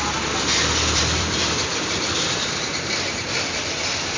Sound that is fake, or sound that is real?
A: fake